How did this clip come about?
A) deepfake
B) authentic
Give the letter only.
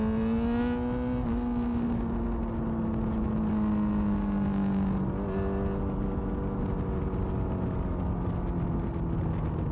B